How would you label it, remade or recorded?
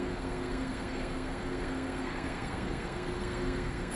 remade